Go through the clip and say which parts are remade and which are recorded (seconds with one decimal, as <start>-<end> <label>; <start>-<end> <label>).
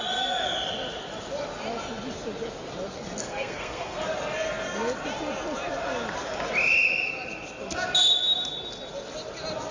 0.0-3.2 recorded; 3.2-4.0 remade; 4.0-9.7 recorded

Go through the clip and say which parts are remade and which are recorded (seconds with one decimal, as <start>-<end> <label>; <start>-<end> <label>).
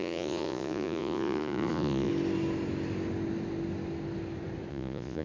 0.0-2.1 remade; 2.1-4.7 recorded; 4.7-5.2 remade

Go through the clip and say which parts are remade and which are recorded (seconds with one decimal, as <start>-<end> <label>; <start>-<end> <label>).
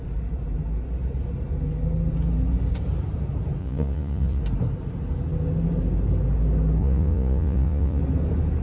0.0-3.6 recorded; 3.6-4.4 remade; 4.4-6.8 recorded; 6.8-8.0 remade; 8.0-8.6 recorded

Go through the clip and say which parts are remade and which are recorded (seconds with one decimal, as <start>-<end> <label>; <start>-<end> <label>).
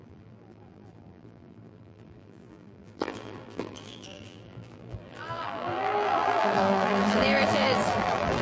0.0-8.4 remade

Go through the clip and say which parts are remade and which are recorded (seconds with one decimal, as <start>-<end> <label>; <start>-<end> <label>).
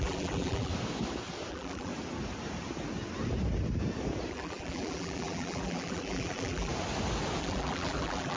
0.0-0.7 remade; 0.7-1.5 recorded; 1.5-1.9 remade; 1.9-4.3 recorded; 4.3-6.7 remade; 6.7-7.4 recorded; 7.4-8.4 remade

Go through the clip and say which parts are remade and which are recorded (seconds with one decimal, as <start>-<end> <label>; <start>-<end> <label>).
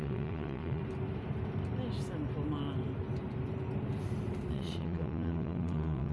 0.0-0.8 remade; 0.8-4.5 recorded; 4.5-6.1 remade